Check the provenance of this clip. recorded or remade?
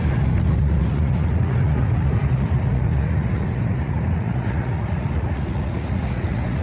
remade